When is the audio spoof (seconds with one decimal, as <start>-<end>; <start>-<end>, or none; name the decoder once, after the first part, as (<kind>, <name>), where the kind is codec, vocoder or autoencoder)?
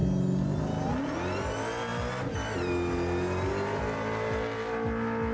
none